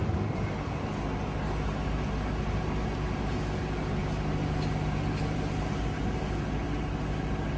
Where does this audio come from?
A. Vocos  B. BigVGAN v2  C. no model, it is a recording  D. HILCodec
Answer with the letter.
C